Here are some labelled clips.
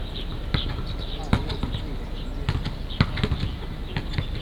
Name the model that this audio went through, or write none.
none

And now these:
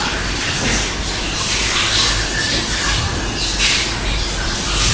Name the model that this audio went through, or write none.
none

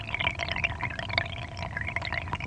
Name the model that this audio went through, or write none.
none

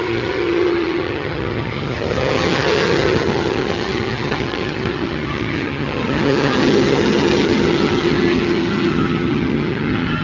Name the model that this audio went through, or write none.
vocoder, HiFi-GAN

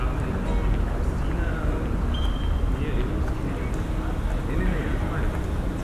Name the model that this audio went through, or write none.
none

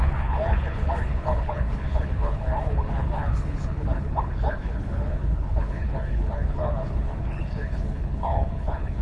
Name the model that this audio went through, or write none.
codec, HILCodec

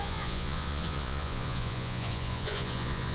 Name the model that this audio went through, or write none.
vocoder, Vocos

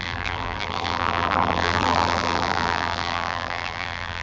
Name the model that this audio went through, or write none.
vocoder, BigVGAN v2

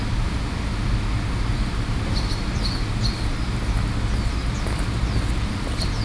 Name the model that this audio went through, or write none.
none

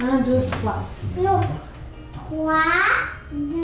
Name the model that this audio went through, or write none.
none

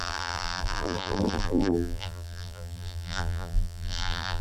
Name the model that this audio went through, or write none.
vocoder, BigVGAN v2